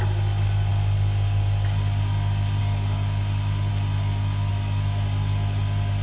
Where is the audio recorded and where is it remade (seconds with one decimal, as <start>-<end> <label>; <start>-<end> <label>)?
0.0-6.0 recorded